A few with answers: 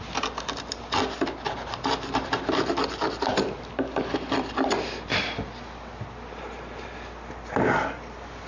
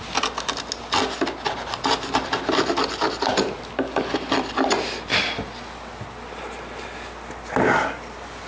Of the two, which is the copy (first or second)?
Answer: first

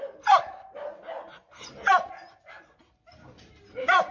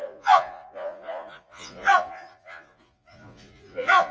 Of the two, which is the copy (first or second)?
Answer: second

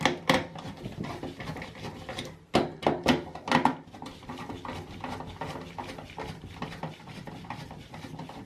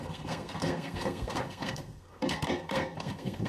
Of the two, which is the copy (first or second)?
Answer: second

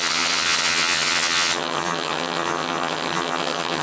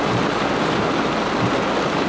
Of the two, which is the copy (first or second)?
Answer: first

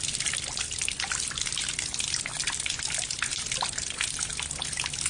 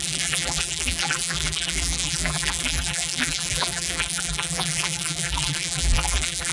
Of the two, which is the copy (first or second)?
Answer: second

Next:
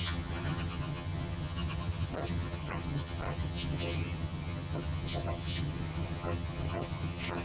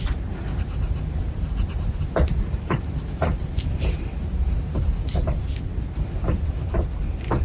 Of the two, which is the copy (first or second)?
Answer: first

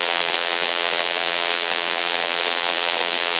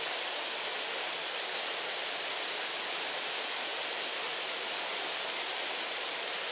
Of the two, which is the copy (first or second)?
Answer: first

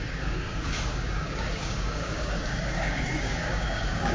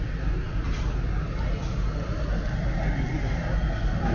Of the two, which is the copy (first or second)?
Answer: first